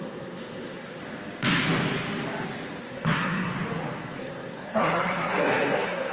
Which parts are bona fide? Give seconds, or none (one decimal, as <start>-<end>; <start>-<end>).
1.0-2.8; 3.5-4.2